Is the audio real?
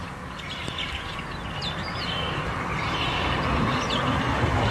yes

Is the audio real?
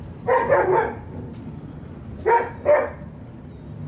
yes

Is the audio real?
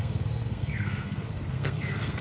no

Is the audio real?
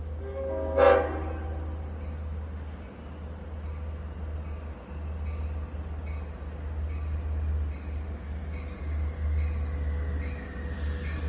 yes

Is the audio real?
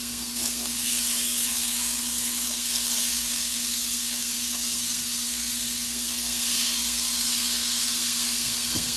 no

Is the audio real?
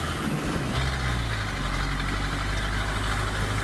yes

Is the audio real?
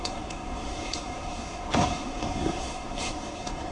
no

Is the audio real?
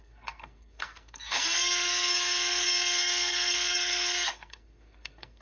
no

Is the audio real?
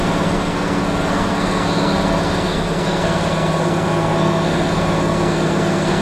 no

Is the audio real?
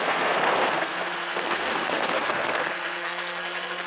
no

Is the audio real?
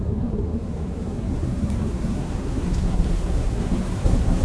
no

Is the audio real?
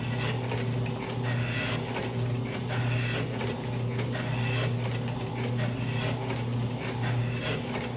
yes